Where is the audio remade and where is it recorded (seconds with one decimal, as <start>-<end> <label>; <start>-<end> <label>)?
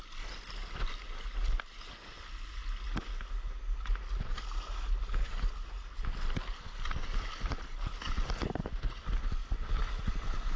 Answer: 0.0-10.6 recorded